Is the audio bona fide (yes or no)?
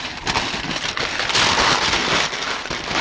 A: yes